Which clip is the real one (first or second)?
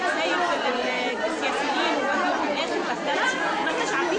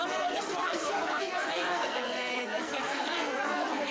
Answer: first